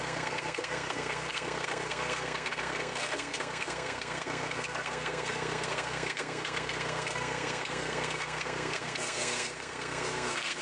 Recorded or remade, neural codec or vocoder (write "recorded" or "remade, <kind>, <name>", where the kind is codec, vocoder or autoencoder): remade, codec, SNAC